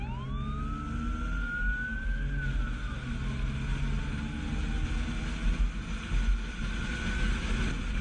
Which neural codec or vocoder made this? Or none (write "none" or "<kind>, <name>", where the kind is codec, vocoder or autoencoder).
none